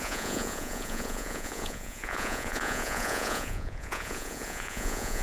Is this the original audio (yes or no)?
no